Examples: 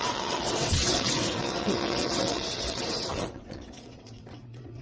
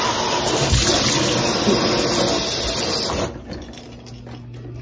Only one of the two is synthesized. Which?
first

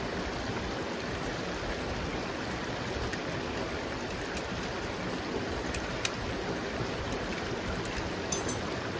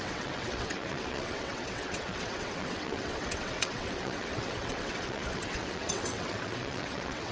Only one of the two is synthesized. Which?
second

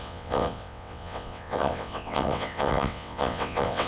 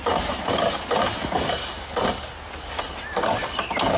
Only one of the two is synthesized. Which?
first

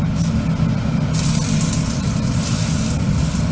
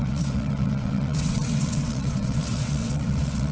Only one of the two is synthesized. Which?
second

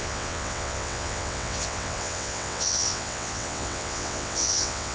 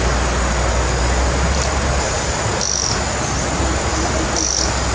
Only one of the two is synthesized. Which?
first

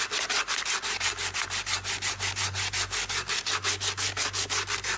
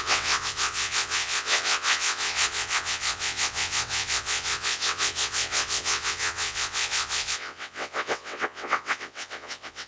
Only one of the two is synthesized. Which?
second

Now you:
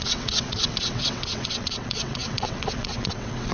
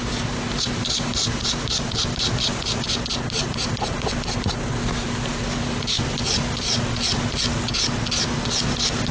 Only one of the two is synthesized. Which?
first